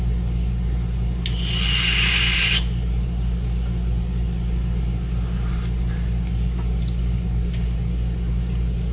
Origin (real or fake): real